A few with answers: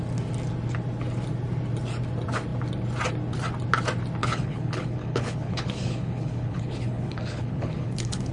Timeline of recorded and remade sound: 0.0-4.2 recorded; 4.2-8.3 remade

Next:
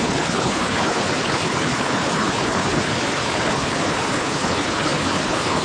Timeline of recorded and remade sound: 0.0-5.6 remade

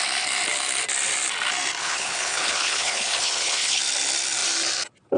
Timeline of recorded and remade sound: 0.0-1.8 recorded; 1.8-3.8 remade; 3.8-5.2 recorded

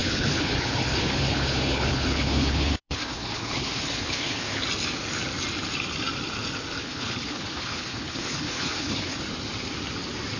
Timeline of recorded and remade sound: 0.0-4.6 remade; 4.6-6.8 recorded; 6.8-9.2 remade; 9.2-10.4 recorded

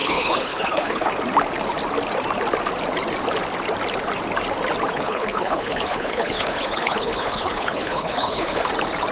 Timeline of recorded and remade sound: 0.0-1.1 remade; 1.1-4.9 recorded; 4.9-8.7 remade; 8.7-9.1 recorded

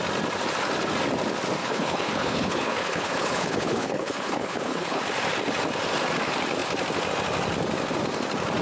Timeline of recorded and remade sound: 0.0-1.6 recorded; 1.6-5.0 remade; 5.0-8.6 recorded

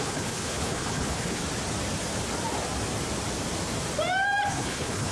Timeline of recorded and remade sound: 0.0-1.4 remade; 1.4-4.5 recorded; 4.5-5.1 remade

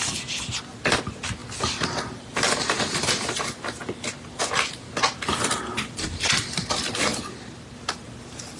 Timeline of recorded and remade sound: 0.0-8.6 recorded